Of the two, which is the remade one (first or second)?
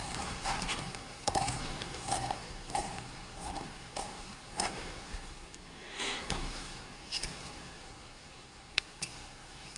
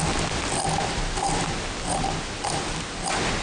first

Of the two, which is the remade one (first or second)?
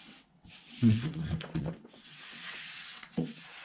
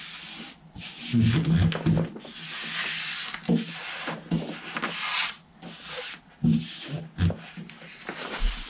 first